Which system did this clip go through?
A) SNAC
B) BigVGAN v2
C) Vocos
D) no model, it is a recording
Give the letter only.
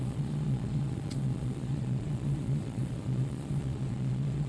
C